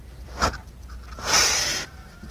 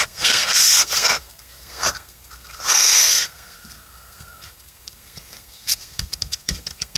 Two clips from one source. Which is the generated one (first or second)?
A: second